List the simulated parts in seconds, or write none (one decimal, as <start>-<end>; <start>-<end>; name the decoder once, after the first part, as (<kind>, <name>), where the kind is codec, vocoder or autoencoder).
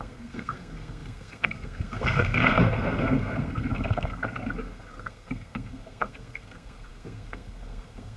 0.0-8.2 (codec, SNAC)